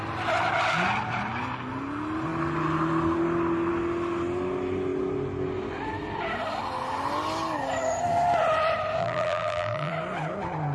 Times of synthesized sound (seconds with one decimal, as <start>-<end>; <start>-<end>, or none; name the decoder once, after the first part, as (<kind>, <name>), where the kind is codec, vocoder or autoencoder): 9.0-9.9 (vocoder, BigVGAN v2)